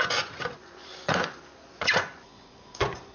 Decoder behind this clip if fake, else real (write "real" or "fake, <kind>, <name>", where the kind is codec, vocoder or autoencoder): fake, vocoder, Vocos